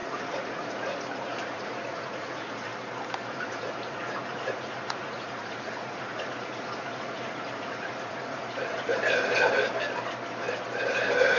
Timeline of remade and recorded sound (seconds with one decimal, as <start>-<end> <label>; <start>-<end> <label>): 0.0-2.7 remade; 2.7-3.3 recorded; 3.3-8.9 remade; 8.9-11.4 recorded